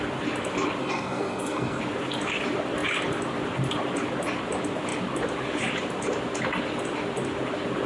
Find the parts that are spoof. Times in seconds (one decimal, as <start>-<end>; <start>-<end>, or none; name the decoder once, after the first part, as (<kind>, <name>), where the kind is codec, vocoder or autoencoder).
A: 0.8-1.8 (codec, SNAC)